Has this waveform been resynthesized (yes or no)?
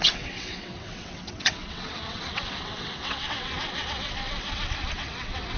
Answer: yes